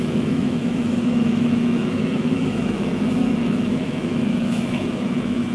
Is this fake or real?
fake